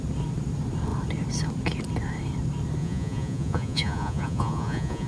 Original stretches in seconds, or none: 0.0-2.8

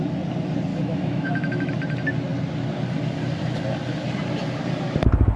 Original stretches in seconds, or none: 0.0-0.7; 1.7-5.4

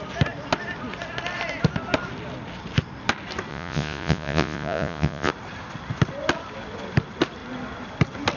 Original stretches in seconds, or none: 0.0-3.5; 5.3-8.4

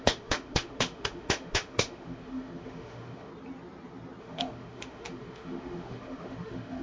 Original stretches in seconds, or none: 3.3-4.2